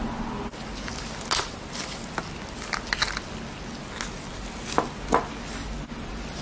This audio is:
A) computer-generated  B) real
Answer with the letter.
B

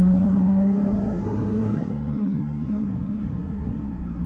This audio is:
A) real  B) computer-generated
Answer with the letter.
B